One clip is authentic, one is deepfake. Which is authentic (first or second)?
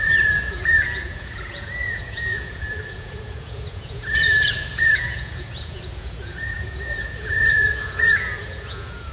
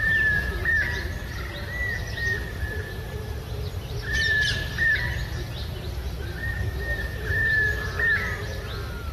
second